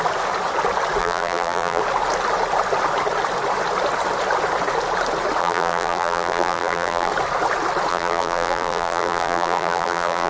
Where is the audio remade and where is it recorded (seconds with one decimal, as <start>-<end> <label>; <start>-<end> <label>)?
0.0-1.0 recorded; 1.0-1.8 remade; 1.8-5.4 recorded; 5.4-7.1 remade; 7.1-7.9 recorded; 7.9-10.3 remade